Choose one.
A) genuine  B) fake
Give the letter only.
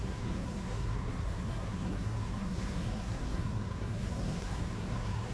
B